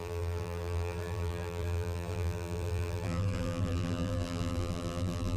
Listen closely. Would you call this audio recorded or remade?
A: remade